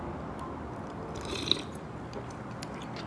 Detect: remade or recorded recorded